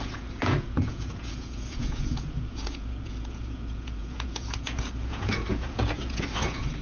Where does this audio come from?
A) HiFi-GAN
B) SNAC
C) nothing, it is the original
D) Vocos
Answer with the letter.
D